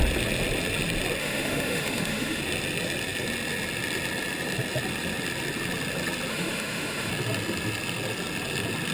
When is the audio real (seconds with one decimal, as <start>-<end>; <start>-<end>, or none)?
0.0-1.2; 2.4-6.3; 7.1-8.9

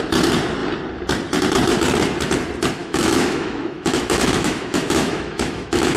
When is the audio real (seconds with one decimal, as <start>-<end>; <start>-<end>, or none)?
0.0-2.8

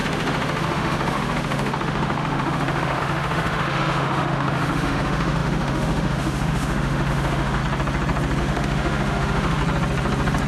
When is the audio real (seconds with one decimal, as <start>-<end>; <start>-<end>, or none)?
7.6-8.4; 9.6-10.5

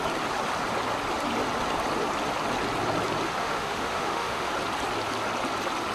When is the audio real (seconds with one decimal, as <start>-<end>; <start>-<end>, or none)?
0.0-3.4; 4.5-5.9

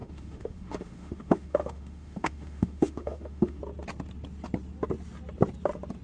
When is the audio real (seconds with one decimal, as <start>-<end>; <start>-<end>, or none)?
3.6-6.0

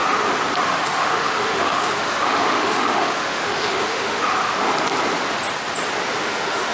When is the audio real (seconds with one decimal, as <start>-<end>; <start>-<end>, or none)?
0.0-0.6; 4.3-6.1

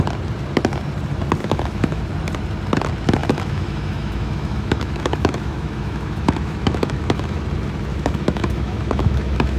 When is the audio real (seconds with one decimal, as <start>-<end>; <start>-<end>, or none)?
0.0-1.4; 2.0-3.2; 7.4-7.9